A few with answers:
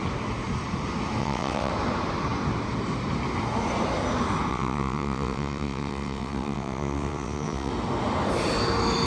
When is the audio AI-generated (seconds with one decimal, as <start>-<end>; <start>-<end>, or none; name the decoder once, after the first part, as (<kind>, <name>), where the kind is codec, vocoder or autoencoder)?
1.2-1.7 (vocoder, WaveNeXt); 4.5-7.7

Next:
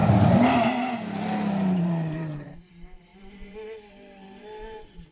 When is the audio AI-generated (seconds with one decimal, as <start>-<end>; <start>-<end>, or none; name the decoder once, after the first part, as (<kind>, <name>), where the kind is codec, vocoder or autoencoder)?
1.0-5.1 (vocoder, BigVGAN v2)

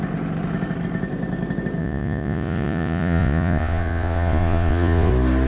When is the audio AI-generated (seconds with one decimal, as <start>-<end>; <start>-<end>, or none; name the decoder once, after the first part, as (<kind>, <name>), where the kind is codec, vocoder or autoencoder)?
1.8-5.1 (vocoder, Vocos)